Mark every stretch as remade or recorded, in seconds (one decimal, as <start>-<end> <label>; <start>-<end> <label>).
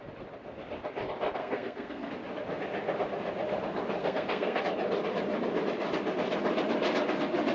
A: 0.0-1.4 recorded; 1.4-2.1 remade; 2.1-4.0 recorded; 4.0-4.6 remade; 4.6-7.5 recorded